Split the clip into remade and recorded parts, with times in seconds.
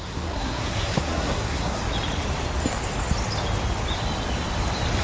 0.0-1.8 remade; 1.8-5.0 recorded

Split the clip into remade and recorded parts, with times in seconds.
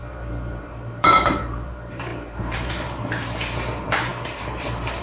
0.0-5.0 remade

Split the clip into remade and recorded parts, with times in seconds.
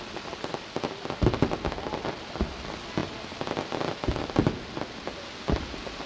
0.0-6.1 recorded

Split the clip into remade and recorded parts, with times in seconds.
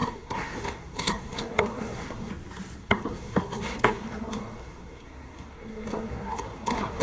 0.0-2.3 remade; 2.3-2.8 recorded; 2.8-7.0 remade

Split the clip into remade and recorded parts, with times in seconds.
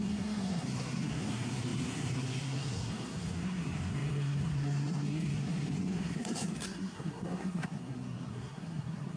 0.0-9.2 remade